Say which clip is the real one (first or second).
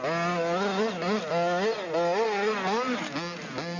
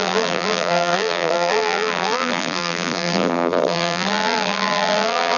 first